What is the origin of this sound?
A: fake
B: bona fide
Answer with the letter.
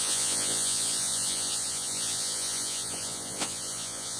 A